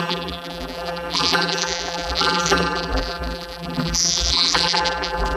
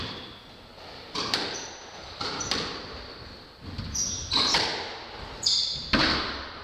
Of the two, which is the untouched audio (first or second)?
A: second